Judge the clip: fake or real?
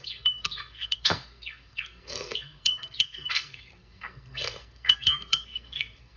fake